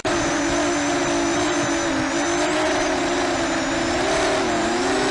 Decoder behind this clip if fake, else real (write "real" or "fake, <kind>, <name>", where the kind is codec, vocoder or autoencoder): real